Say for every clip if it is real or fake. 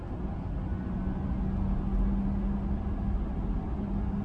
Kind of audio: real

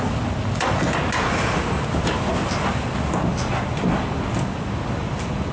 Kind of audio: real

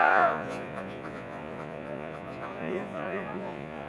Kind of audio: fake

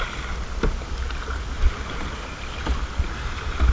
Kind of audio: real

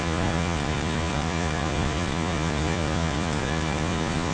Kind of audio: fake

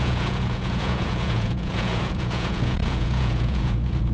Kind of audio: fake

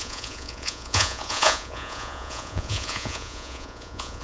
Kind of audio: fake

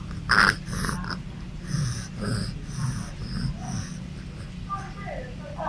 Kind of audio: real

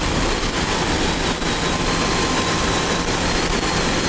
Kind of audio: real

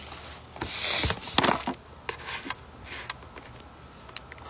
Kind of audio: real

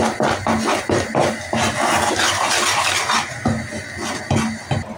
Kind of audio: real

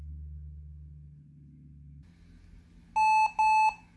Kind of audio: real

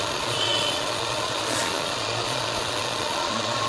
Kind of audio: fake